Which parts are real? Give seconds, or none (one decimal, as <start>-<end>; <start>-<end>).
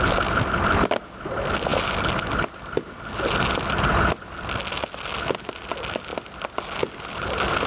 0.0-7.7